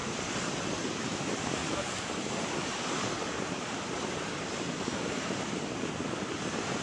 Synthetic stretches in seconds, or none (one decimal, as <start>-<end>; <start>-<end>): 0.8-1.6; 2.2-6.8